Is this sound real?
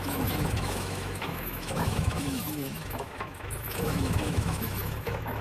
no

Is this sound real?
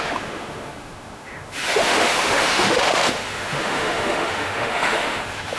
no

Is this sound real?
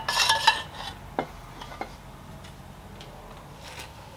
yes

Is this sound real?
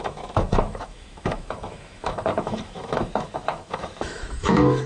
no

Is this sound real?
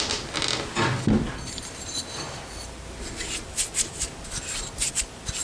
yes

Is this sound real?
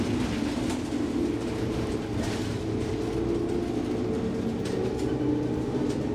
yes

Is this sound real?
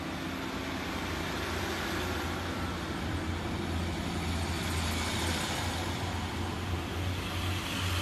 yes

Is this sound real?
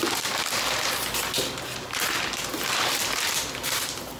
yes